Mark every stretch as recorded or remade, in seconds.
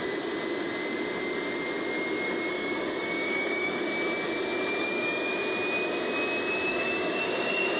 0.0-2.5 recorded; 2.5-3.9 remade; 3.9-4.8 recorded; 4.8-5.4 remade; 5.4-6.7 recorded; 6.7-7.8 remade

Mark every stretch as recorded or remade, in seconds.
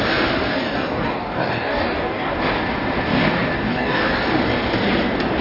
0.0-0.5 recorded; 0.5-2.3 remade; 2.3-3.7 recorded; 3.7-4.2 remade; 4.2-5.4 recorded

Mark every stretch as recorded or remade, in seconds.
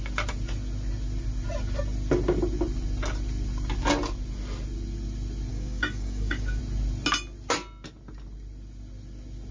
0.0-5.5 recorded; 5.5-6.6 remade; 6.6-9.5 recorded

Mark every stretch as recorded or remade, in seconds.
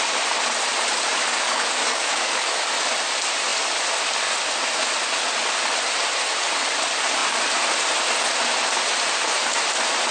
0.0-1.3 recorded; 1.3-2.7 remade; 2.7-10.1 recorded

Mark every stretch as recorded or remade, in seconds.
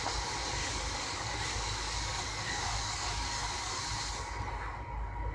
0.0-0.6 recorded; 0.6-3.8 remade; 3.8-5.3 recorded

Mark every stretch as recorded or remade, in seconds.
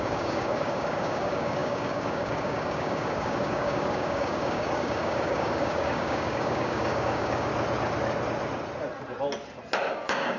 0.0-7.5 remade; 7.5-9.9 recorded; 9.9-10.4 remade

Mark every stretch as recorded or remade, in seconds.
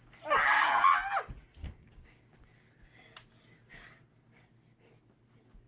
0.0-1.6 recorded; 1.6-2.2 remade; 2.2-5.7 recorded